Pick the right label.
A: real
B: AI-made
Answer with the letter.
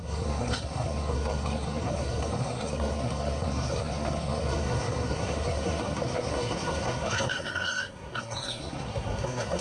B